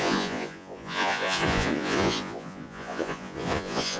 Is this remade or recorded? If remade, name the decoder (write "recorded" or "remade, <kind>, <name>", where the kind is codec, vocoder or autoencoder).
remade, vocoder, Vocos